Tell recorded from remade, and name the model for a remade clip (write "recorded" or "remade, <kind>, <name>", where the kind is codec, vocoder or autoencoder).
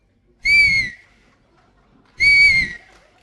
recorded